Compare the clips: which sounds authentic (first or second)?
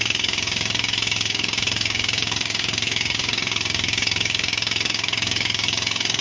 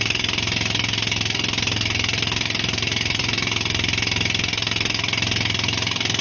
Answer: second